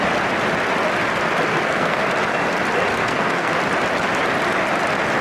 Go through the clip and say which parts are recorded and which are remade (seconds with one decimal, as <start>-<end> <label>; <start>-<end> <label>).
0.0-1.5 recorded; 1.5-2.0 remade; 2.0-2.9 recorded; 2.9-3.6 remade; 3.6-5.2 recorded